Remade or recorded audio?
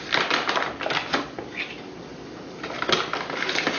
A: recorded